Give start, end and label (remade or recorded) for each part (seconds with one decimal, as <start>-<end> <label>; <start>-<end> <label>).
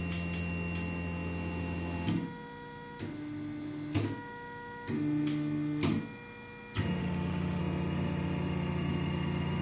0.0-7.0 recorded; 7.0-7.6 remade; 7.6-9.6 recorded